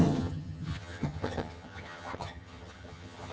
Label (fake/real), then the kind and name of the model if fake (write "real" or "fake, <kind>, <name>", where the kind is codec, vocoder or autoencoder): fake, vocoder, HiFi-GAN